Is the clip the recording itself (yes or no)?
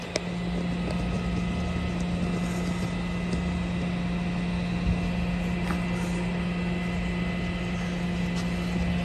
yes